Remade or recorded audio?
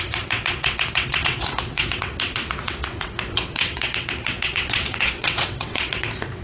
remade